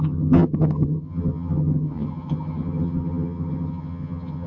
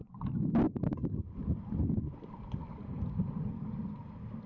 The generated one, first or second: first